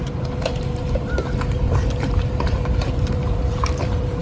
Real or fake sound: fake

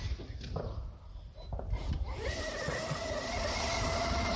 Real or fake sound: real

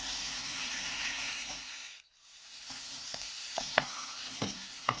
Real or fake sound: fake